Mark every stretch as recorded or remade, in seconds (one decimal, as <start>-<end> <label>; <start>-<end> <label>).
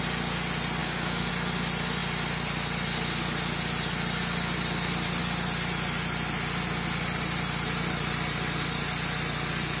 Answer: 0.0-0.8 recorded; 0.8-1.3 remade; 1.3-9.8 recorded